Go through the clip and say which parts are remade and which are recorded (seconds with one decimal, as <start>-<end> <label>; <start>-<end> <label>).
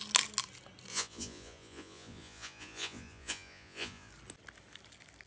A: 0.0-0.9 recorded; 0.9-4.1 remade; 4.1-5.3 recorded